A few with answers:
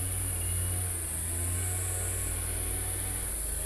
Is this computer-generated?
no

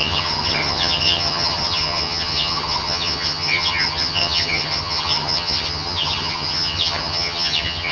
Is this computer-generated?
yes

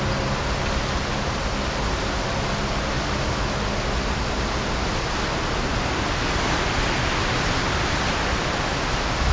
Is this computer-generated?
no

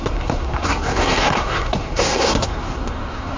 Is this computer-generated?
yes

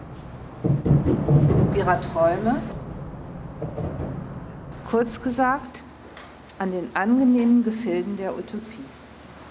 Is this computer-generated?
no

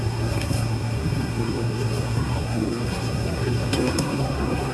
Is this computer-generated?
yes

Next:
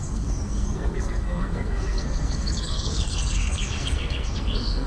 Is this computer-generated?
yes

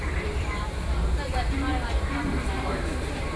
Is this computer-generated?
yes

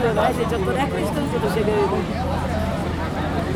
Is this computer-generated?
no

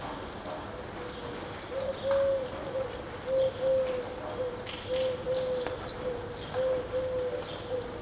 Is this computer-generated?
no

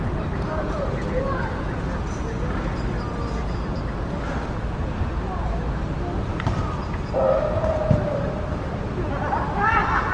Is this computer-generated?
no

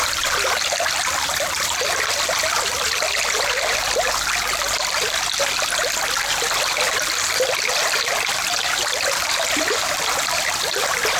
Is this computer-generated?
no